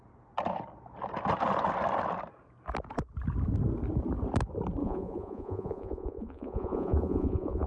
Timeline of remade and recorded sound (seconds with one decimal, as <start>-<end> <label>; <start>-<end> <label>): 0.0-4.8 recorded; 4.8-7.7 remade